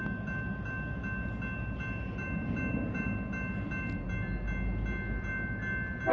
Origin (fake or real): real